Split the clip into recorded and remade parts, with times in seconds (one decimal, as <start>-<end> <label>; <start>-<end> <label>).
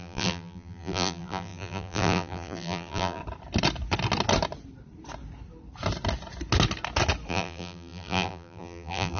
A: 0.0-3.2 remade; 3.2-7.3 recorded; 7.3-9.2 remade